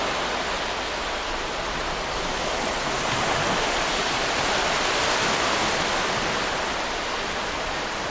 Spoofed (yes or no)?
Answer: no